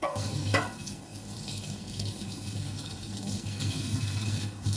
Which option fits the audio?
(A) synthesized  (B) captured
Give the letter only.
A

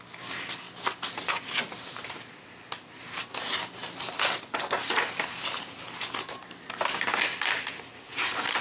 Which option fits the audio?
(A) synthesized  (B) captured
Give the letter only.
B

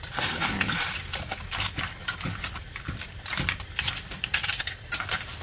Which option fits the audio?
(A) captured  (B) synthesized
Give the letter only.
B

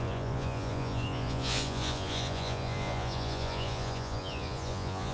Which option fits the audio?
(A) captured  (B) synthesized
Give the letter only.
B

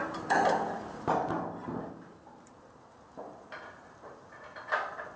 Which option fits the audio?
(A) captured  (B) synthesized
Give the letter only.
B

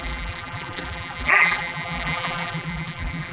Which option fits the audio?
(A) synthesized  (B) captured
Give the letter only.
A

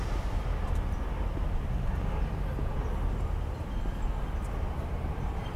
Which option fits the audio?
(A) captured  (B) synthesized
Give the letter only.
A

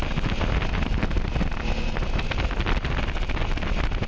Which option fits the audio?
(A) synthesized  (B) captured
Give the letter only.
B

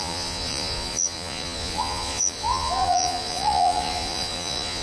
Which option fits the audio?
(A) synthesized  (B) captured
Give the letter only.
A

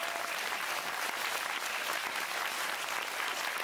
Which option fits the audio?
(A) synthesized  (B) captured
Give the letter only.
B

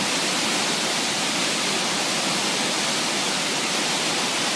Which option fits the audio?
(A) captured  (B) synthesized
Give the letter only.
A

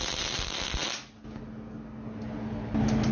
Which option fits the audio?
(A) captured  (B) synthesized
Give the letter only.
A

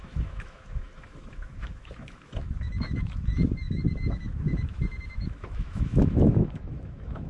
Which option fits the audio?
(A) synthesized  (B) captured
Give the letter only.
A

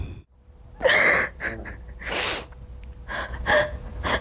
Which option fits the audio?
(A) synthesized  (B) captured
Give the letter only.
B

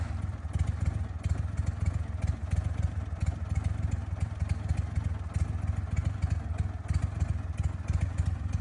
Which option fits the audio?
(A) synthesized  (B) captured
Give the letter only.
B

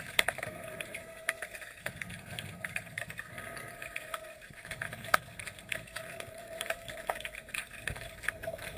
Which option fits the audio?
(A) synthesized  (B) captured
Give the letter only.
A